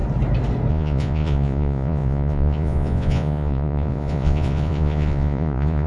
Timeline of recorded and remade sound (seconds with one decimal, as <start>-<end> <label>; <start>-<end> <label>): 0.0-0.7 recorded; 0.7-5.9 remade